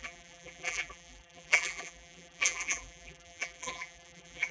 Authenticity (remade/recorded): remade